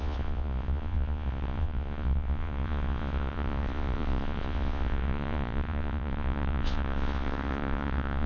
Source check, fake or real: fake